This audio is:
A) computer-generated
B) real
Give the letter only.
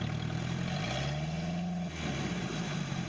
B